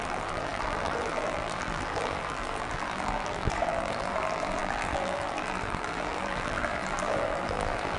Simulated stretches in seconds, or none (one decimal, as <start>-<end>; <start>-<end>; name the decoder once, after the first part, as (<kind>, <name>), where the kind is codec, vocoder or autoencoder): 0.0-8.0 (vocoder, BigVGAN v2)